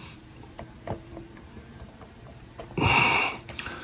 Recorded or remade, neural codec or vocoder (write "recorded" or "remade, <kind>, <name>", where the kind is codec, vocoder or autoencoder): remade, vocoder, BigVGAN v2